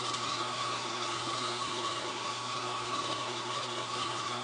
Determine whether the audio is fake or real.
fake